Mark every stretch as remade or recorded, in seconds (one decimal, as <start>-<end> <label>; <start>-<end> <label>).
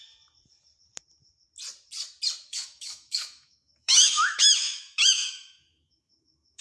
0.0-2.5 recorded; 2.5-6.6 remade